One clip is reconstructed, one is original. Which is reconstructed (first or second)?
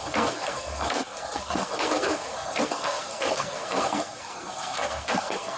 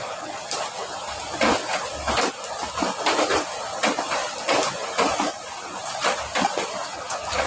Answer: first